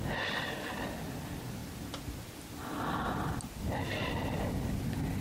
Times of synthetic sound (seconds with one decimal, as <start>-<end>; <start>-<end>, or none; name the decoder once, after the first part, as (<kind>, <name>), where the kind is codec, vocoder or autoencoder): none